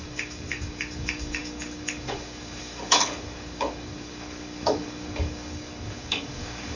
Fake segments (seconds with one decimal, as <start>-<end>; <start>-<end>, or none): 0.0-6.8